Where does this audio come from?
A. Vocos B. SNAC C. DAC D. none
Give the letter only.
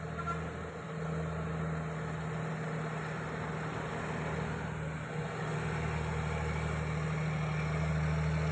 D